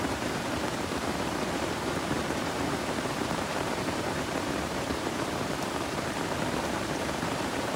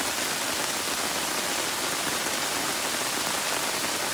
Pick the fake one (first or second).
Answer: first